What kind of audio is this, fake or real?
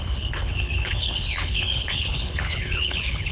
fake